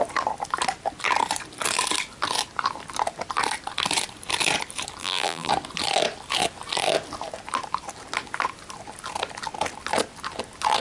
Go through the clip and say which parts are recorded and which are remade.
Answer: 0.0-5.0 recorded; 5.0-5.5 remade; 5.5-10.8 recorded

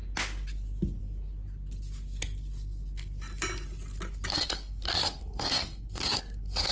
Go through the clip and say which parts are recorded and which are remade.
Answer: 0.0-4.3 recorded; 4.3-6.7 remade

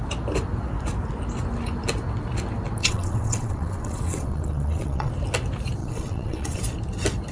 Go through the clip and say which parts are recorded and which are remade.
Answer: 0.0-2.8 recorded; 2.8-5.1 remade; 5.1-5.8 recorded; 5.8-6.6 remade; 6.6-7.3 recorded